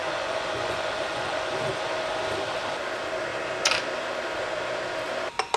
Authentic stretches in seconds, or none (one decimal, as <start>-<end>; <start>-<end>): 1.5-5.6

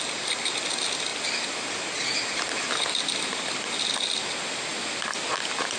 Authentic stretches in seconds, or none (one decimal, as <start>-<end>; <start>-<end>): 0.0-1.1; 1.7-4.7; 5.3-5.8

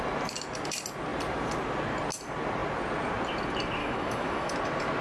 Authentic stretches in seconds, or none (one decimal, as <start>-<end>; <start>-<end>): 0.0-3.8; 4.5-5.0

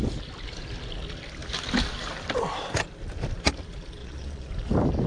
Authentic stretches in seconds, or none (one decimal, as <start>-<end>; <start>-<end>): 0.0-4.0; 4.5-5.1

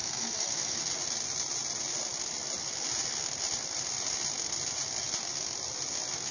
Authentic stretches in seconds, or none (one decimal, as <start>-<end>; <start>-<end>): 0.8-6.3

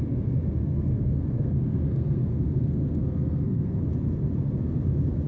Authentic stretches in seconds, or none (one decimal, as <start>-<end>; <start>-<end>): 0.0-0.6; 3.8-5.3

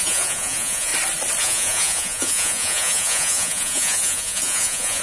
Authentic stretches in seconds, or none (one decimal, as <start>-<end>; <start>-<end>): 0.9-1.4

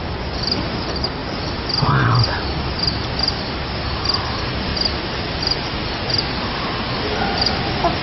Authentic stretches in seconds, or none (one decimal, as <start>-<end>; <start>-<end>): 0.0-8.0